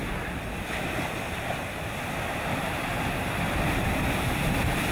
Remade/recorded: recorded